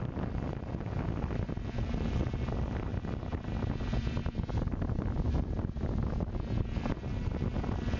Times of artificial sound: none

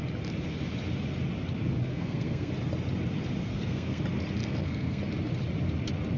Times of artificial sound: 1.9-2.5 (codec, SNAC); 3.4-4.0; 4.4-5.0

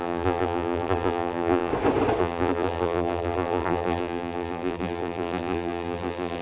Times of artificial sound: 0.0-1.7 (vocoder, BigVGAN v2); 2.2-6.4

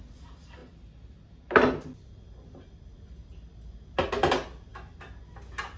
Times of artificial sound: none

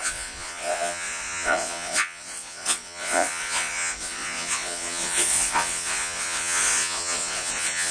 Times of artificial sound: 0.0-7.9 (vocoder, Vocos)

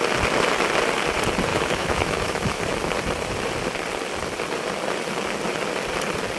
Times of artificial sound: 1.5-2.6 (autoencoder, DAC-VAE)